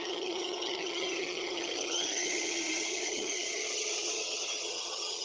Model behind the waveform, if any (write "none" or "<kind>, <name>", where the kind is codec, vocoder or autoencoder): vocoder, HiFi-GAN